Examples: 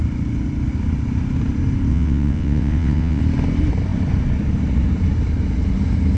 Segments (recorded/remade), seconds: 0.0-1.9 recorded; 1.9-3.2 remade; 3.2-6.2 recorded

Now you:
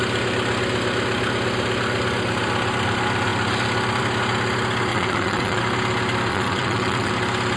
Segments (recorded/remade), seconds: 0.0-4.9 recorded; 4.9-5.6 remade; 5.6-6.3 recorded; 6.3-7.1 remade; 7.1-7.6 recorded